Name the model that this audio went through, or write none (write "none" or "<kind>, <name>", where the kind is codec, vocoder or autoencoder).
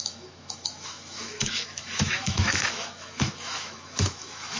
autoencoder, DAC-VAE